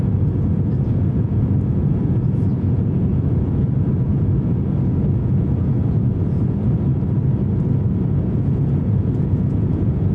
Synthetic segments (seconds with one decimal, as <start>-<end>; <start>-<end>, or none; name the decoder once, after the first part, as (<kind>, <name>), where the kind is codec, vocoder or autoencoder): 0.0-6.9 (vocoder, Vocos); 8.2-10.1